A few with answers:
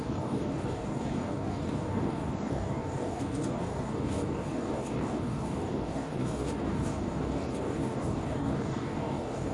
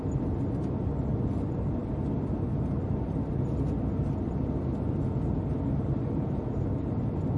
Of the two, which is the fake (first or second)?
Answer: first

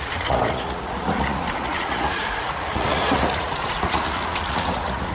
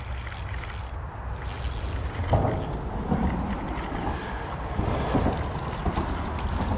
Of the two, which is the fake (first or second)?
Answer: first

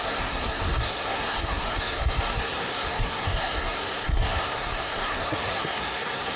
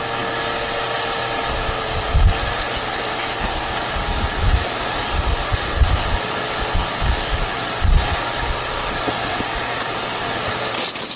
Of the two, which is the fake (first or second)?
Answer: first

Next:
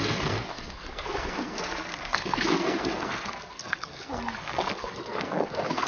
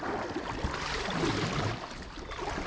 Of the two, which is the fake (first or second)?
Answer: first